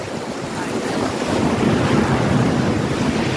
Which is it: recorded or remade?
recorded